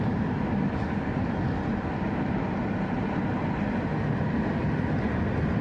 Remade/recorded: recorded